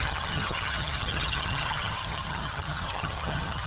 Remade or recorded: remade